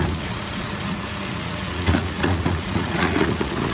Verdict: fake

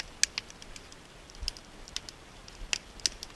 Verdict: real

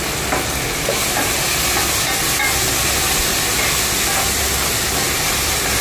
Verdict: real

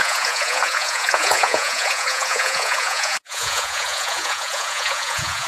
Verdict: fake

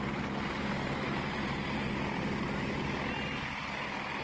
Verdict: real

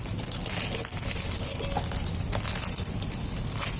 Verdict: real